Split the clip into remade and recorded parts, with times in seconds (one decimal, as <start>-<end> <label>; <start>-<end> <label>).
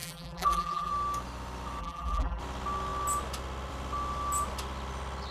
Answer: 0.0-0.9 remade; 0.9-1.8 recorded; 1.8-2.4 remade; 2.4-5.3 recorded